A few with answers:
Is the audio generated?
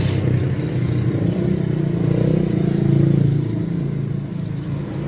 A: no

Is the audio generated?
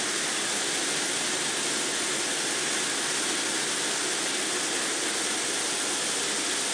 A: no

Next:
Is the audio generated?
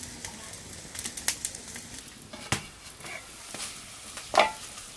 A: no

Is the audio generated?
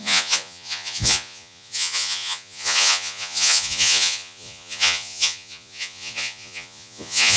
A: yes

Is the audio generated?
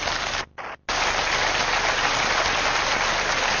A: no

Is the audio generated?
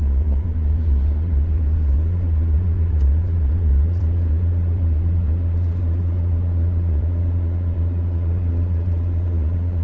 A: yes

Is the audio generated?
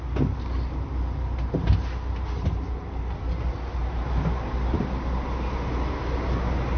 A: no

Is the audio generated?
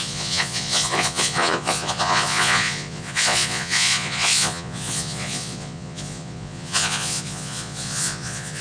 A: yes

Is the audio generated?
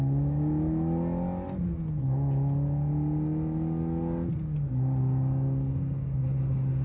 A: no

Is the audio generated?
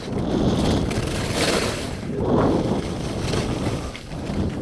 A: no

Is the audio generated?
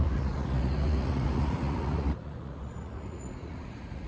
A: yes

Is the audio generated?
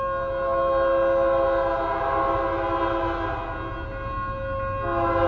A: no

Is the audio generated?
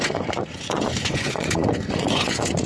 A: yes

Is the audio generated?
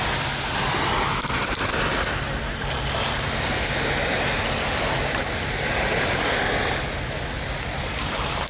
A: no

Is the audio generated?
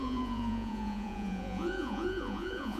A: yes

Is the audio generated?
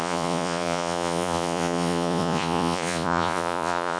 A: yes